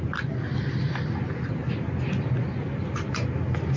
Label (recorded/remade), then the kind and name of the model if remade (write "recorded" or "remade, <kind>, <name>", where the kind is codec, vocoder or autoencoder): recorded